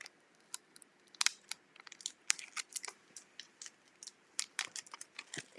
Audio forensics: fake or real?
real